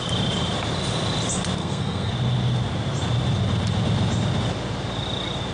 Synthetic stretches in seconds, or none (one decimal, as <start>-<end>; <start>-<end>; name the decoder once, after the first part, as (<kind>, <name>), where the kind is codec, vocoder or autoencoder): 1.6-2.1 (codec, SNAC)